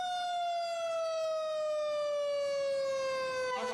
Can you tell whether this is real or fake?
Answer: real